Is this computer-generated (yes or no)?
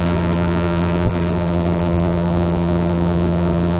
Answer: yes